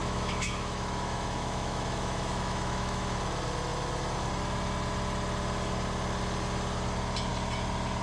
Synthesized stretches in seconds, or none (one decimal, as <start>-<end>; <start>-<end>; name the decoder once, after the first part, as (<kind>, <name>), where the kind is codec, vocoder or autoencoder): 0.0-3.0 (autoencoder, DAC-VAE)